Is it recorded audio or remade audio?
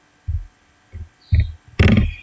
recorded